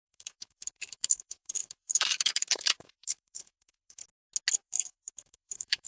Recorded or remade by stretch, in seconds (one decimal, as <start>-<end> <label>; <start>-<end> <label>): 0.0-4.0 remade; 4.0-4.6 recorded; 4.6-5.9 remade